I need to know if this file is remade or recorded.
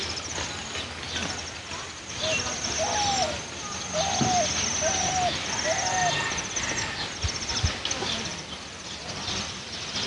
recorded